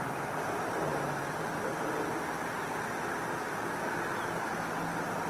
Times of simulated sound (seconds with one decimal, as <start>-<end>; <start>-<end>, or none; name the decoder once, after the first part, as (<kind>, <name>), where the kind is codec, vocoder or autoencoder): none